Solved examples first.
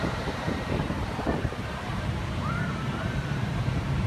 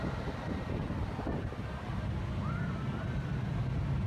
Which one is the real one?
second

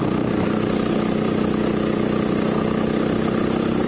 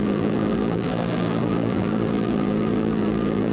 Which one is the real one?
first